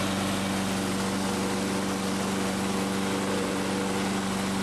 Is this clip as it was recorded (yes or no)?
yes